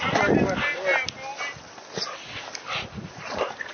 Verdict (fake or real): real